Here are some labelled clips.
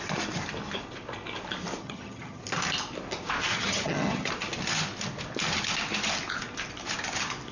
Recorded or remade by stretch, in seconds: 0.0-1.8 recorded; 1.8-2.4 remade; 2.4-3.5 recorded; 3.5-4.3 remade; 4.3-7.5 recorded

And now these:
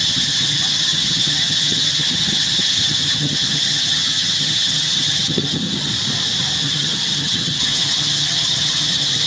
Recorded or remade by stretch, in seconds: 0.0-5.9 remade; 5.9-6.6 recorded; 6.6-9.3 remade

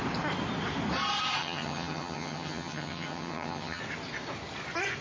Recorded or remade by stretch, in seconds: 0.0-1.4 recorded; 1.4-3.8 remade; 3.8-5.0 recorded

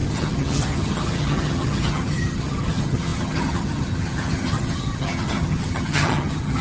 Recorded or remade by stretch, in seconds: 0.0-6.6 remade

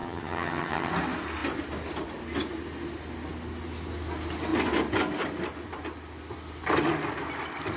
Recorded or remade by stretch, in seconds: 0.0-0.9 remade; 0.9-7.8 recorded